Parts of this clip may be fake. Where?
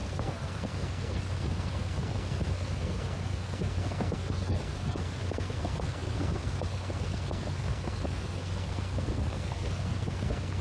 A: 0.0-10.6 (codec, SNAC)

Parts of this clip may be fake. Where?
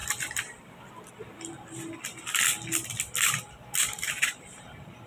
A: none